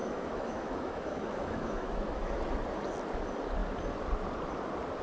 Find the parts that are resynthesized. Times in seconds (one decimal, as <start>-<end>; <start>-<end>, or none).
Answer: 0.0-2.4